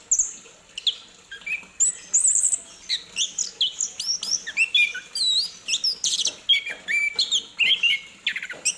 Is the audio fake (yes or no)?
no